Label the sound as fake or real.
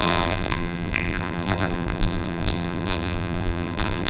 fake